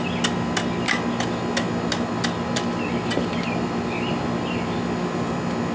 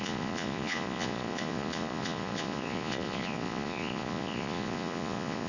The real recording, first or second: first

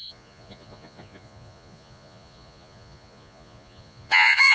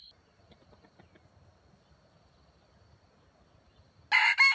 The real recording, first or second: second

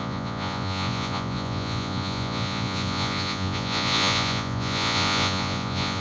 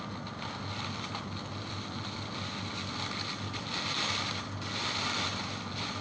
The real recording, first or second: second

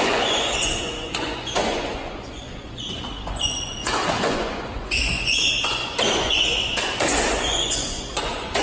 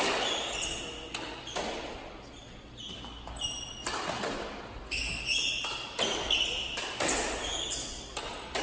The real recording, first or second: second